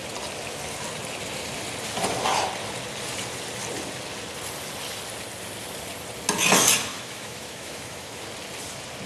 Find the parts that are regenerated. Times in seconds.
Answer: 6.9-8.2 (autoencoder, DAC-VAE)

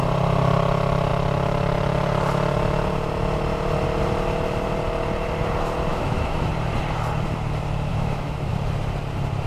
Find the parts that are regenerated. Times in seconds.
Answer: 5.9-6.5 (autoencoder, DAC-VAE); 7.9-8.5

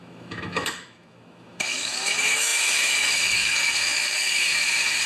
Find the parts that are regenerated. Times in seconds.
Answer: 0.0-5.1 (autoencoder, DAC-VAE)